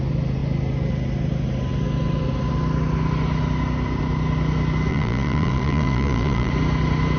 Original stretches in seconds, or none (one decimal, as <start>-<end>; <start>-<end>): 0.0-4.9; 6.5-7.2